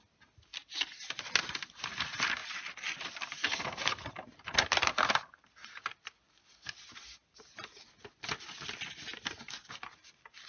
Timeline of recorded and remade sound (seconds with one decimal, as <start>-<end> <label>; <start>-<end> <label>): 0.0-10.5 recorded